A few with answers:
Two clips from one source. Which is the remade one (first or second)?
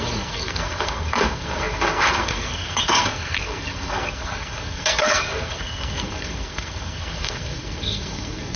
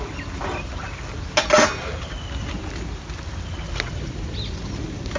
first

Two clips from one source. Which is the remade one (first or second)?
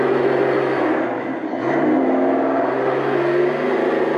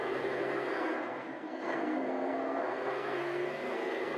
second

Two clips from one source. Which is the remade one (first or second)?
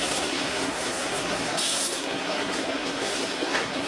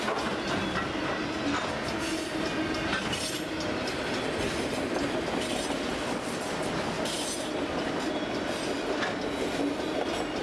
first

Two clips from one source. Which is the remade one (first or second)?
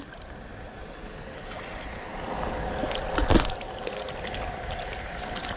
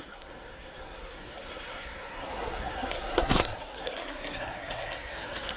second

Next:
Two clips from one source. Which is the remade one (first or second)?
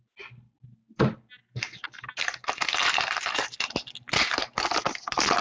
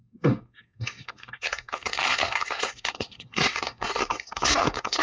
second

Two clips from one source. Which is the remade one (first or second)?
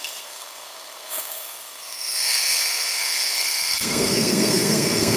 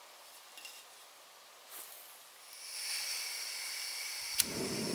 first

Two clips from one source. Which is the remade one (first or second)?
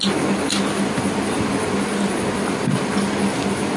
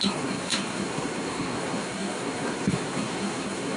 second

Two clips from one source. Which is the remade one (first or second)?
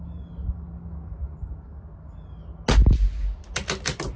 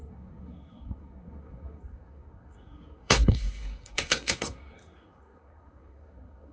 second